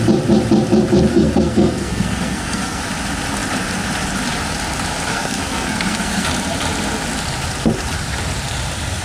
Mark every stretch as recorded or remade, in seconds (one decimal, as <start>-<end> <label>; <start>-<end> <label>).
0.0-1.1 recorded; 1.1-2.8 remade; 2.8-5.1 recorded; 5.1-6.3 remade; 6.3-9.0 recorded